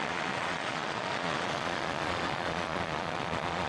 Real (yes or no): no